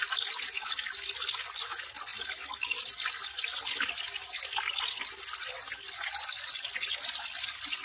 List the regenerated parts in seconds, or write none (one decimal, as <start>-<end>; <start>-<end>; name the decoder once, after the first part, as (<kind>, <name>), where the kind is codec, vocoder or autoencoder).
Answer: none